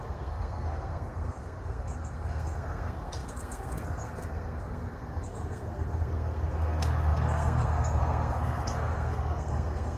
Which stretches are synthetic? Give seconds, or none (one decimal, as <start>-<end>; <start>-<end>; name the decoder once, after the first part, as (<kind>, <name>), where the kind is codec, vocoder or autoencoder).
0.0-10.0 (codec, SNAC)

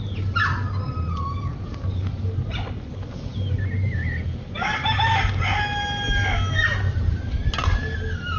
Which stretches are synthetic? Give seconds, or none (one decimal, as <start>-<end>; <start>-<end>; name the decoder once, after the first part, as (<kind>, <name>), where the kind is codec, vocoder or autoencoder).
none

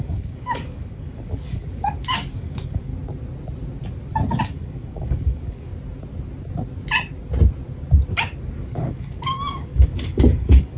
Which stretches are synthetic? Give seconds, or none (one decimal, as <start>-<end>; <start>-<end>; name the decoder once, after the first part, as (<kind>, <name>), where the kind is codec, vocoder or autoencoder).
0.0-2.9 (codec, DAC); 4.4-5.7; 8.6-10.8

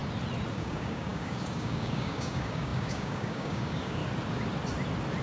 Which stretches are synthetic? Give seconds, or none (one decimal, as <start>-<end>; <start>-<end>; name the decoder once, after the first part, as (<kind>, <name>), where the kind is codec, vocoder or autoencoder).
0.5-4.0 (codec, DAC)

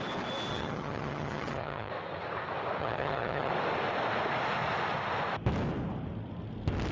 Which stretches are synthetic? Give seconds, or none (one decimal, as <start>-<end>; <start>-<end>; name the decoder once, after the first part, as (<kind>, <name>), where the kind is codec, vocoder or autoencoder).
0.5-1.9 (vocoder, HiFi-GAN); 2.8-3.5